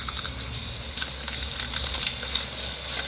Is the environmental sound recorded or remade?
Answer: recorded